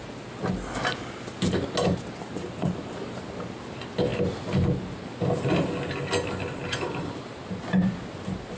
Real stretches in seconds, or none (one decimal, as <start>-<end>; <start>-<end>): 0.0-8.6